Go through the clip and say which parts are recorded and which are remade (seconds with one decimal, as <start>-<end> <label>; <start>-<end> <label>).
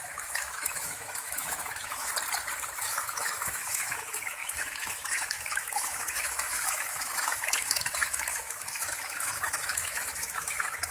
0.0-2.1 remade; 2.1-2.7 recorded; 2.7-10.9 remade